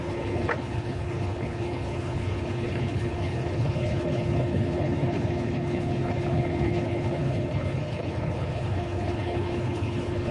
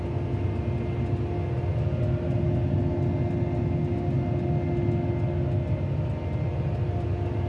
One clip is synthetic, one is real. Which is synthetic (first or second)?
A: first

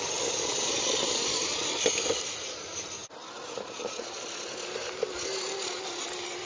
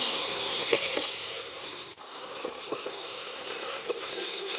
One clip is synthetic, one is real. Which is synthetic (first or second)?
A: second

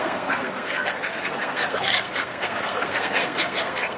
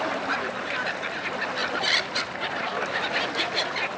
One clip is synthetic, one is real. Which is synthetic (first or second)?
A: first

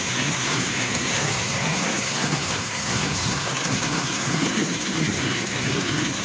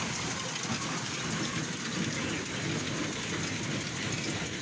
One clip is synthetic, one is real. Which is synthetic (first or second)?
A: first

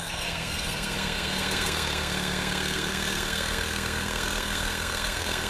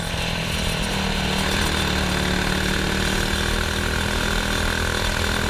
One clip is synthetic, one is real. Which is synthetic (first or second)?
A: first